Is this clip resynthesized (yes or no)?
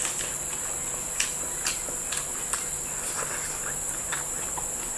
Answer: no